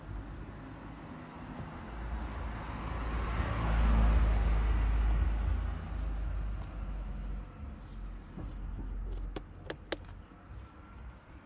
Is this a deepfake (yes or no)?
no